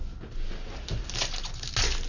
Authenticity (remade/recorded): recorded